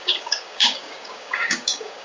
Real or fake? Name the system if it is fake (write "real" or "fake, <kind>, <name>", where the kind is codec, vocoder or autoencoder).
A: fake, codec, DAC